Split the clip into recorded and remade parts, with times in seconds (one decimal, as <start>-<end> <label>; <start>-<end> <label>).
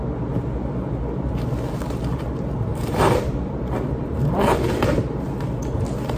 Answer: 0.0-2.7 recorded; 2.7-5.3 remade; 5.3-6.2 recorded